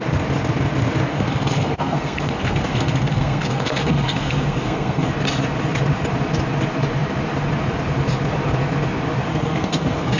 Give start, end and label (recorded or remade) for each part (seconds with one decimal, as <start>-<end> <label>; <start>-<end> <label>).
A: 0.0-1.1 recorded; 1.1-5.1 remade; 5.1-9.3 recorded; 9.3-10.2 remade